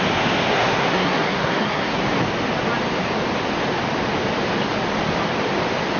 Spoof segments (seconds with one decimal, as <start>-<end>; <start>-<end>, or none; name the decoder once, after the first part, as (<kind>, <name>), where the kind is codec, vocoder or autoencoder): 0.5-2.0 (codec, SNAC)